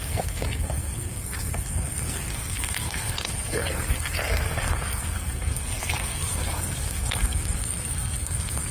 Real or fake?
fake